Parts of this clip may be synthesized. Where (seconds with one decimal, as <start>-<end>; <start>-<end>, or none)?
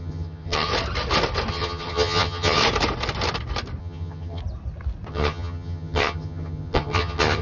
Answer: 0.0-0.7; 1.5-2.6; 3.8-4.4; 5.1-7.4